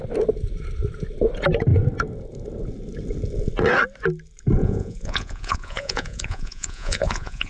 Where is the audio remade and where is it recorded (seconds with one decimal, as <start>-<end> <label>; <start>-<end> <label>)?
0.0-4.6 recorded; 4.6-7.5 remade